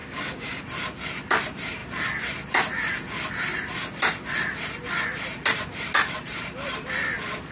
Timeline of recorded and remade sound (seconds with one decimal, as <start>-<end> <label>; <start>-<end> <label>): 0.0-0.6 remade; 0.6-7.5 recorded